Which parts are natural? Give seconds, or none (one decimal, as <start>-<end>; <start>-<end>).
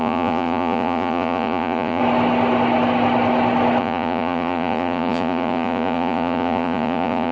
2.0-3.8